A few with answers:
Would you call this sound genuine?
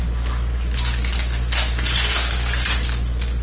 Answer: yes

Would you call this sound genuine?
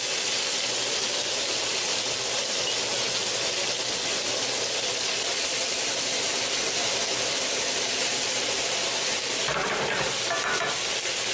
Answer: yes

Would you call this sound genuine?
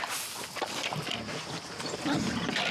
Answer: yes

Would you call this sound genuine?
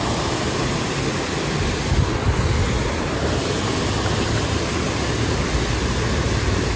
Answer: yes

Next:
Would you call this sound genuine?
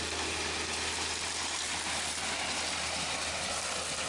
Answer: yes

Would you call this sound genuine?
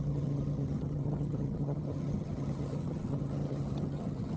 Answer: no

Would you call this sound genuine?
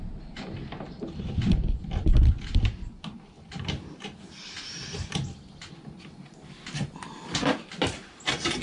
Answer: yes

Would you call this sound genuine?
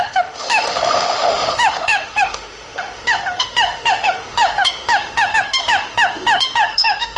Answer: no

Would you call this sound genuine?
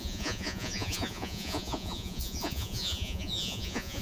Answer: no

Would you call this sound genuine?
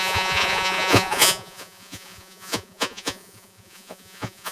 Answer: no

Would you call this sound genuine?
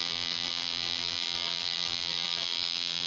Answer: no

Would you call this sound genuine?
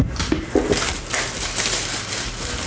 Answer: yes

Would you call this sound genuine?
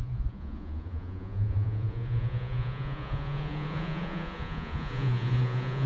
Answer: no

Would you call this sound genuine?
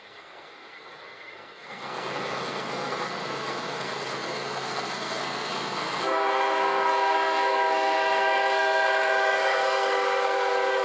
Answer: no